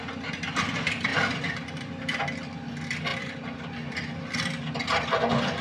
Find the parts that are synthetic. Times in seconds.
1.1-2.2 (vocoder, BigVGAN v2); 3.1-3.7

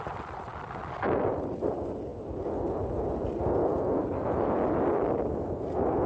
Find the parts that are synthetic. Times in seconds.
none